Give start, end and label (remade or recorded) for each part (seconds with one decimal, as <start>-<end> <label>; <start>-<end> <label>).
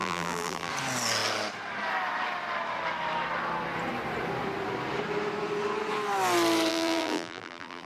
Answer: 0.0-0.7 remade; 0.7-6.7 recorded; 6.7-7.9 remade